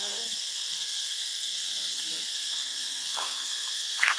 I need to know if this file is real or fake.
fake